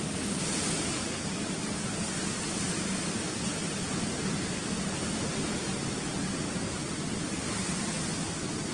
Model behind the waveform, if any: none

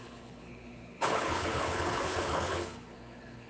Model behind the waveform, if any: codec, HILCodec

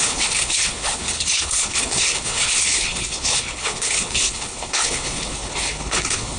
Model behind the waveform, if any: codec, HILCodec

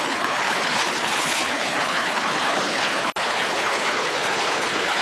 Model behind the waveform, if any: codec, HILCodec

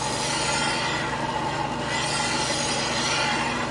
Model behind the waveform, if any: none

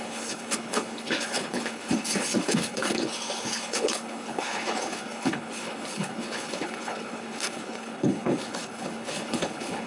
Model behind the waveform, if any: codec, HILCodec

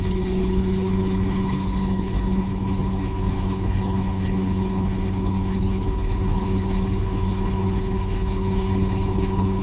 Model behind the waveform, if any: codec, HILCodec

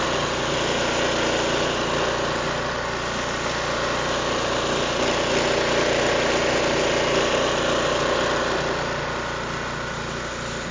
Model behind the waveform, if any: none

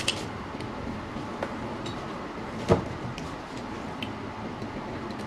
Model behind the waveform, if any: none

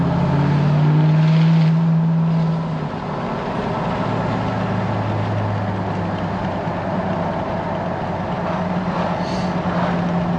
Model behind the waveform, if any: none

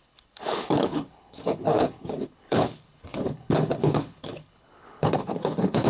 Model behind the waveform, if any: codec, HILCodec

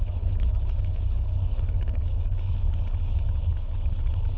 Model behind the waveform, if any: codec, HILCodec